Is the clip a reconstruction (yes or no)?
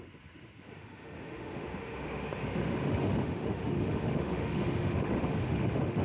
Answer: yes